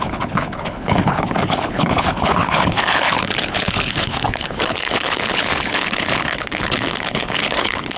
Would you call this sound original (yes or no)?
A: no